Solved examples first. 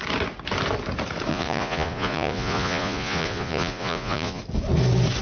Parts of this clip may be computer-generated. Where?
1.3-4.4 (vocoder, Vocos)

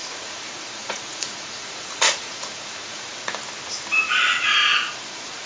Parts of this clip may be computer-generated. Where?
0.0-3.3 (vocoder, Vocos); 4.7-5.5

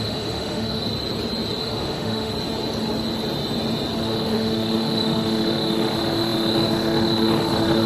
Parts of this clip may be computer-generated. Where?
0.0-0.8 (autoencoder, DAC-VAE); 1.6-2.3; 4.0-7.9